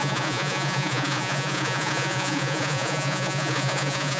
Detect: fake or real fake